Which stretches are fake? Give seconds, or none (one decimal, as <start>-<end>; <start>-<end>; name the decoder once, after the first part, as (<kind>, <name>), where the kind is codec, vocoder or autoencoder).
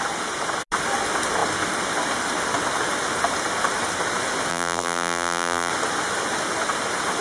4.5-5.7 (vocoder, BigVGAN v2)